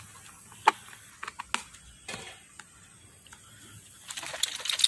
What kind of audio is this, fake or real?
real